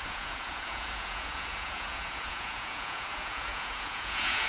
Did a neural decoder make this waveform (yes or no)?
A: yes